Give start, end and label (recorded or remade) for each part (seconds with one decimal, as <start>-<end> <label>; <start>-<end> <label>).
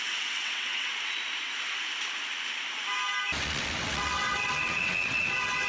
0.0-0.9 remade; 0.9-3.4 recorded; 3.4-5.7 remade